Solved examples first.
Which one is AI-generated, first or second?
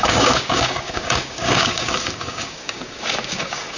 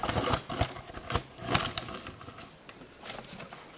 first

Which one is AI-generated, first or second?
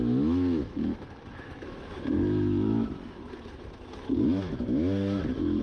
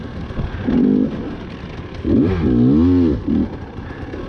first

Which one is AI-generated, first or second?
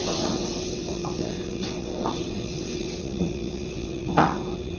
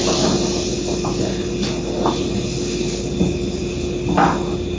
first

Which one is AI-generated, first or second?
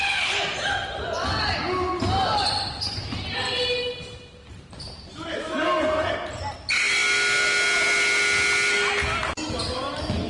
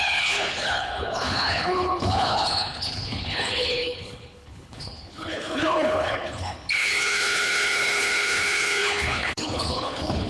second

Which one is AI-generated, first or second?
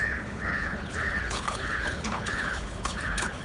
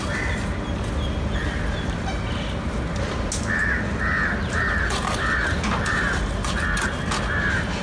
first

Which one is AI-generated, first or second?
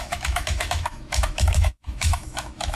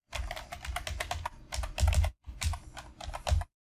first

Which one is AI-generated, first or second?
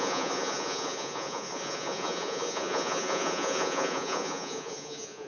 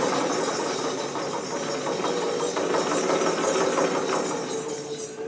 first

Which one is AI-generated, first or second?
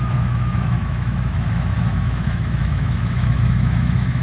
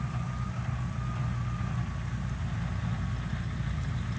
first